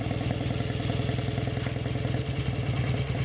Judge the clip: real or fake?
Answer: real